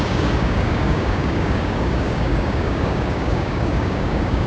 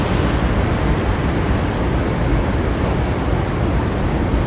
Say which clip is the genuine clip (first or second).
second